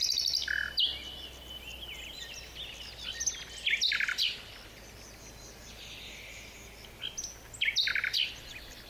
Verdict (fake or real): real